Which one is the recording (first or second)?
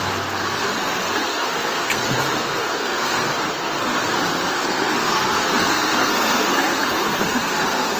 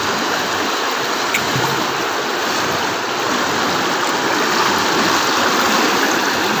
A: second